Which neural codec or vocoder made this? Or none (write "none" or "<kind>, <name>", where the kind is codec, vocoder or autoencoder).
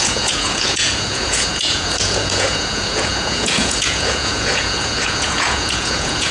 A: vocoder, Vocos